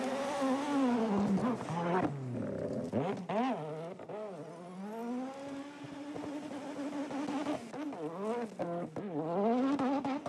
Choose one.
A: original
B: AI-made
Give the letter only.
A